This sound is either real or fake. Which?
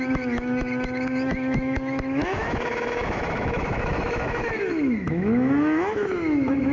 fake